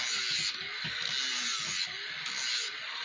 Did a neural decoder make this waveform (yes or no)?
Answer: no